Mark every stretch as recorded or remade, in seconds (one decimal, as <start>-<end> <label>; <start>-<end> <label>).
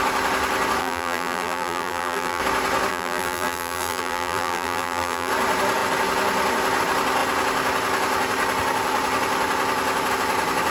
0.0-0.8 recorded; 0.8-2.4 remade; 2.4-2.9 recorded; 2.9-5.3 remade; 5.3-10.7 recorded